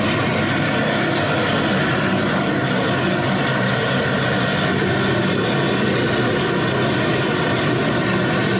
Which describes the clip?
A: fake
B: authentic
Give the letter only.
B